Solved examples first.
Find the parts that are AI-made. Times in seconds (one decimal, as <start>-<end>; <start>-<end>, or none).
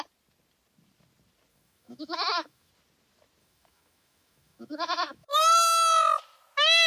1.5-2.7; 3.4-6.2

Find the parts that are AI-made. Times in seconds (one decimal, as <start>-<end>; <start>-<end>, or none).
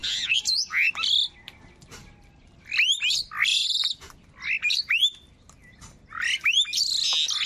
0.0-0.9; 3.5-4.1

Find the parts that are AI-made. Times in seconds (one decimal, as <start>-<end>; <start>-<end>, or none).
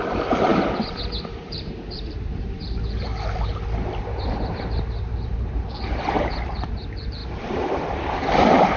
0.0-0.5; 1.2-3.1; 4.0-7.2; 8.4-8.8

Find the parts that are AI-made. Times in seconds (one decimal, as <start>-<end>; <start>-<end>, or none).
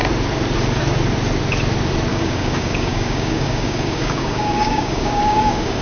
2.1-5.8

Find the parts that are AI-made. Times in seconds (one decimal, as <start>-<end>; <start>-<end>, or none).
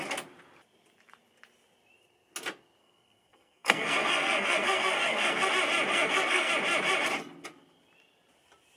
2.8-5.5; 5.9-6.5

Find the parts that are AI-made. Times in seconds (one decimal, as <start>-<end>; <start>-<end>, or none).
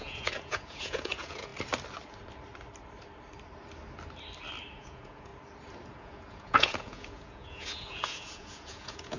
0.0-1.5; 4.7-5.3; 5.9-9.2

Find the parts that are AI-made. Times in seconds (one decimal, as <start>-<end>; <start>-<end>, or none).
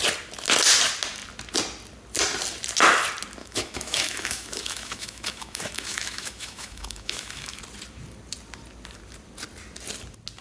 3.4-7.6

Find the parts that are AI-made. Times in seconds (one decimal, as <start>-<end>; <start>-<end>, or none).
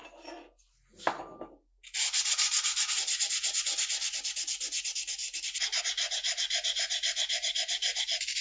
none